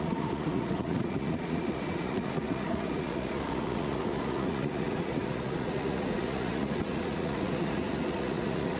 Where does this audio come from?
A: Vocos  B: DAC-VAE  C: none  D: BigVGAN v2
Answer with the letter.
A